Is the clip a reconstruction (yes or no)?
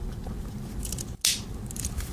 no